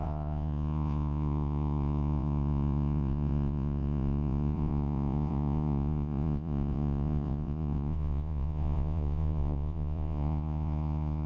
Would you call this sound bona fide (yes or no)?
no